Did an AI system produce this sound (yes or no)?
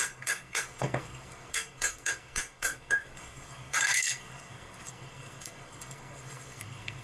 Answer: yes